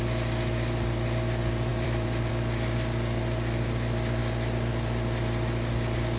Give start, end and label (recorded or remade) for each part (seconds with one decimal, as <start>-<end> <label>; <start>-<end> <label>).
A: 0.0-1.7 recorded; 1.7-2.3 remade; 2.3-6.2 recorded